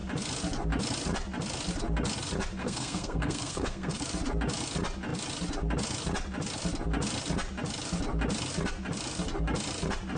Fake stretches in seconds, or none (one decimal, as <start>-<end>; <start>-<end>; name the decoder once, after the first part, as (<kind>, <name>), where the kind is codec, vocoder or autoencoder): 2.6-4.0 (codec, SNAC)